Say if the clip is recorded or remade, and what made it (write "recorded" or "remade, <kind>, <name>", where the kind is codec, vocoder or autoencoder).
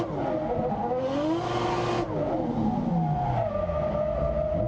recorded